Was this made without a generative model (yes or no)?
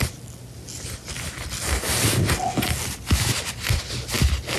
yes